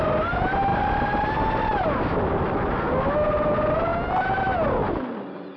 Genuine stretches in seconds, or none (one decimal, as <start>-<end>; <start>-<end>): 0.0-5.6